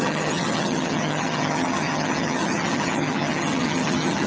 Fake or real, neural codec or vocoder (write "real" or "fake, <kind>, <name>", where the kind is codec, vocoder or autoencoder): fake, vocoder, HiFi-GAN